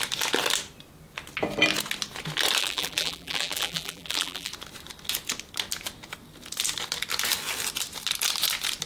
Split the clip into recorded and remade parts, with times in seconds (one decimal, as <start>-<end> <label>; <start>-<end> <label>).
0.0-2.6 recorded; 2.6-4.5 remade; 4.5-8.9 recorded